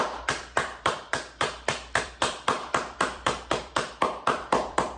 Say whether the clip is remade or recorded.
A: remade